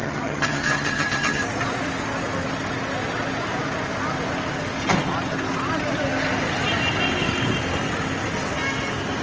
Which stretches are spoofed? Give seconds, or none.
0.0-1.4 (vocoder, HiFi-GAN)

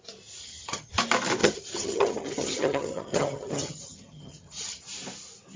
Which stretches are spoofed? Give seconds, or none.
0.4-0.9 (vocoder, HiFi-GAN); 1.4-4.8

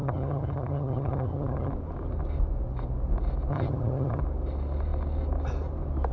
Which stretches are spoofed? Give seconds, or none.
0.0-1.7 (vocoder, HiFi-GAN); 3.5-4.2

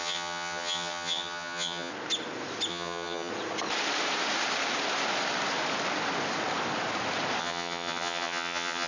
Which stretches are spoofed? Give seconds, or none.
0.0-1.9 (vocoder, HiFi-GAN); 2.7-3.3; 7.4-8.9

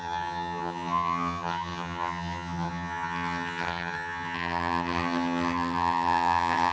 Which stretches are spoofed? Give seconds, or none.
0.0-6.7 (vocoder, HiFi-GAN)